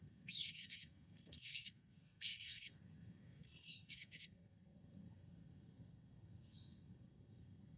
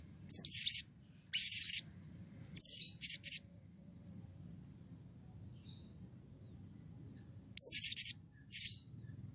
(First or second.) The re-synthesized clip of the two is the first